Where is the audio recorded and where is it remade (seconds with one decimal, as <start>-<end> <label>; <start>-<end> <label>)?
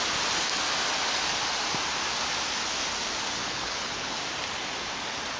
0.0-3.4 recorded; 3.4-4.2 remade; 4.2-5.4 recorded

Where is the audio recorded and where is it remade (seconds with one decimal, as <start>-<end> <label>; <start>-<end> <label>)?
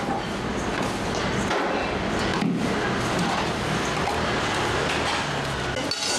0.0-6.2 recorded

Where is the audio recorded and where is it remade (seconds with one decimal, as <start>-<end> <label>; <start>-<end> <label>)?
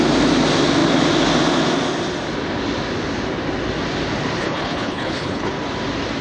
0.0-4.4 recorded; 4.4-5.5 remade; 5.5-6.2 recorded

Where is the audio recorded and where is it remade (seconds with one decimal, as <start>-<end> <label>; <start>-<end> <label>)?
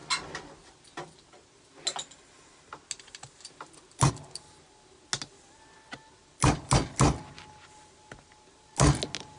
0.0-9.4 recorded